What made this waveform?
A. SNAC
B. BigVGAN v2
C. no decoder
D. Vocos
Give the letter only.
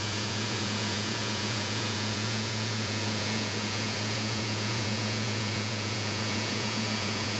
D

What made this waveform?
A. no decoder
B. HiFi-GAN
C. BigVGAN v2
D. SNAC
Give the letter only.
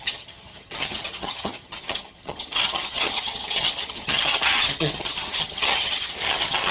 B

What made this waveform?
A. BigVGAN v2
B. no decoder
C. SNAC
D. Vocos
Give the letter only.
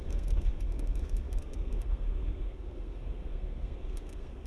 C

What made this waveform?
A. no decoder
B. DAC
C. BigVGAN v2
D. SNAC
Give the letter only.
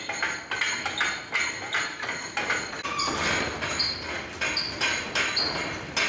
A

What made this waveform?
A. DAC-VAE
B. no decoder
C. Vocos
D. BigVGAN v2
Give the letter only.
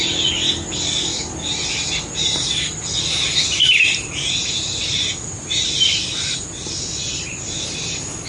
B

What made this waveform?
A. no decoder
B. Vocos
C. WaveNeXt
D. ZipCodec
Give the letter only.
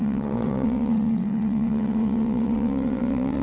C